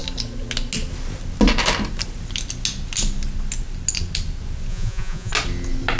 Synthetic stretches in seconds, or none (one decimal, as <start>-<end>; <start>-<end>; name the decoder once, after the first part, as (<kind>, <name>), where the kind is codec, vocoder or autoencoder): 4.7-5.3 (vocoder, Vocos)